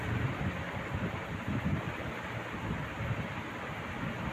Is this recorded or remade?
recorded